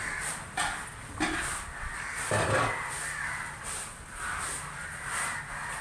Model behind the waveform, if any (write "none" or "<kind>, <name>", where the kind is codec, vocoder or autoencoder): none